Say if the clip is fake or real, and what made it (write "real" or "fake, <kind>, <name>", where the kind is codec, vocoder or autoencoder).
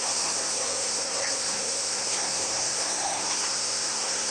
fake, codec, SNAC